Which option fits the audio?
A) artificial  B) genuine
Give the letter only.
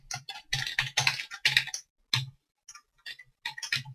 B